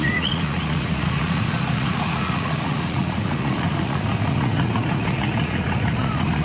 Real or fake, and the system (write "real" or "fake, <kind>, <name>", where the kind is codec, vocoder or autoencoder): fake, vocoder, Vocos